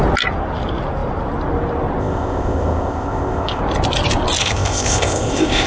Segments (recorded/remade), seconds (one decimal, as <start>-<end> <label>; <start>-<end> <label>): 0.0-2.0 recorded; 2.0-3.6 remade; 3.6-4.4 recorded; 4.4-5.7 remade